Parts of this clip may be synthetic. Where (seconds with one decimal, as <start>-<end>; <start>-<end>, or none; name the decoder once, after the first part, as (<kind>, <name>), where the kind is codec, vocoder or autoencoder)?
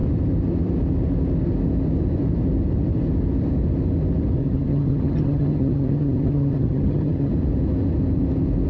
4.4-7.3 (vocoder, HiFi-GAN)